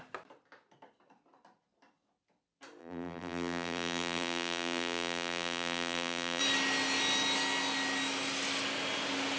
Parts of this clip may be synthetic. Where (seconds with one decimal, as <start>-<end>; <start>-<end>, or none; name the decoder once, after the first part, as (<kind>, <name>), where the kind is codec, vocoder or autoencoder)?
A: 2.8-6.4 (vocoder, BigVGAN v2)